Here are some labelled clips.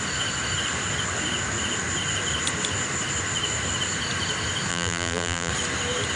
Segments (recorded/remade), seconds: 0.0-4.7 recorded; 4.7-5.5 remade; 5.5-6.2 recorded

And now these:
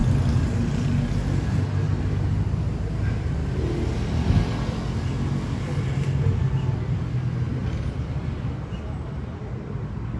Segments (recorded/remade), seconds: 0.0-7.6 recorded; 7.6-9.3 remade; 9.3-10.2 recorded

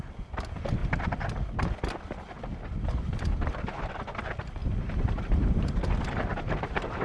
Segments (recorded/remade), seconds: 0.0-4.6 recorded; 4.6-5.8 remade; 5.8-6.3 recorded; 6.3-7.0 remade

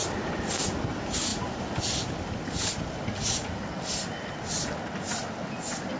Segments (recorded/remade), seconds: 0.0-6.0 recorded